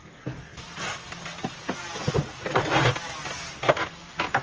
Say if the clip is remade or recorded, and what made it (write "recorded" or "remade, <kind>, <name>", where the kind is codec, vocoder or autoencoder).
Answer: recorded